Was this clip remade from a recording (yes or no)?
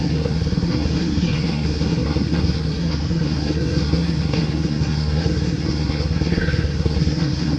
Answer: yes